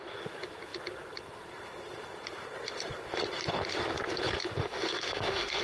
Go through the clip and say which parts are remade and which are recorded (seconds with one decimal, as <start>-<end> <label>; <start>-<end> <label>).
0.0-4.6 recorded; 4.6-5.6 remade